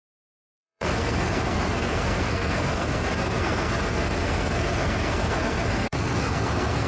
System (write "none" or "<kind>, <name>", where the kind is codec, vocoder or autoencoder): codec, SNAC